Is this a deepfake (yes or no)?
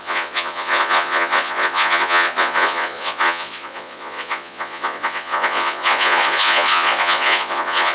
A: yes